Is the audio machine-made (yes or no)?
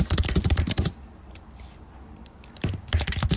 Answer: no